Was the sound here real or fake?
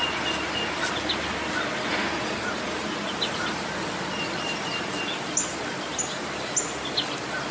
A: real